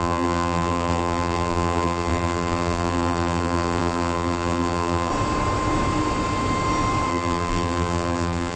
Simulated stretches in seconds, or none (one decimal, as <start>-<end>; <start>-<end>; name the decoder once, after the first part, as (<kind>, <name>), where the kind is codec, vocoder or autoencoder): 0.0-5.1 (vocoder, BigVGAN v2); 7.1-8.6